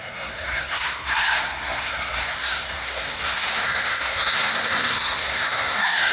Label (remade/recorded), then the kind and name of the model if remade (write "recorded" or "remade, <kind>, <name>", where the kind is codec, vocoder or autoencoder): remade, codec, SNAC